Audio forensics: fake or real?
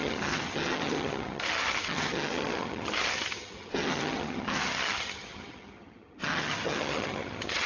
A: fake